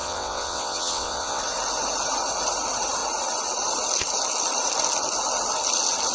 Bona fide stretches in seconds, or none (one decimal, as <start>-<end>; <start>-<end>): 1.4-6.1